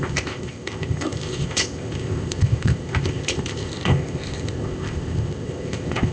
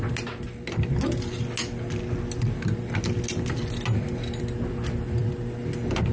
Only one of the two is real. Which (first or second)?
second